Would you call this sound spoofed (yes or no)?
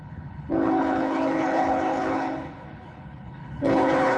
yes